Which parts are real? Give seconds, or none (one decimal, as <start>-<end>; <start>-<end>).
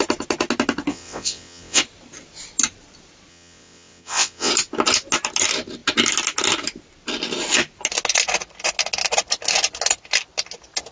0.0-0.9; 1.8-3.3; 4.5-10.9